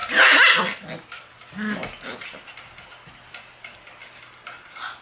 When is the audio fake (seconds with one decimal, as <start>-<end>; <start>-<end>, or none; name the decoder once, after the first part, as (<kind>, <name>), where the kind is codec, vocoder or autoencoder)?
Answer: none